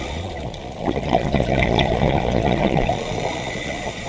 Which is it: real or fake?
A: fake